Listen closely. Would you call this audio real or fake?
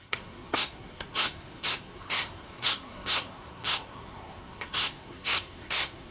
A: fake